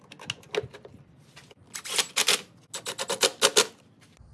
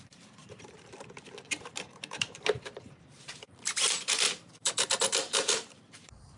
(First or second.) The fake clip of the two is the second